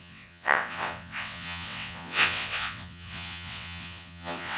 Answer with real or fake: fake